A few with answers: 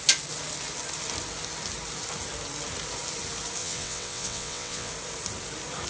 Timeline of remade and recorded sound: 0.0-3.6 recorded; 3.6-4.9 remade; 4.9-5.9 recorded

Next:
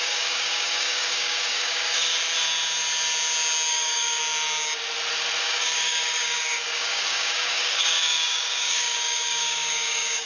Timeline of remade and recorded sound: 0.0-2.1 remade; 2.1-3.7 recorded; 3.7-4.2 remade; 4.2-5.4 recorded; 5.4-10.3 remade